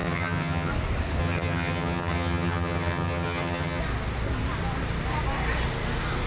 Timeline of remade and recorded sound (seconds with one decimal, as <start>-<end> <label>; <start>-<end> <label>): 0.0-0.7 remade; 0.7-1.2 recorded; 1.2-3.8 remade; 3.8-6.3 recorded